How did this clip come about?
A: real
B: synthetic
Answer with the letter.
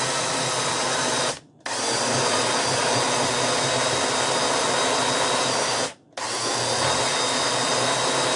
A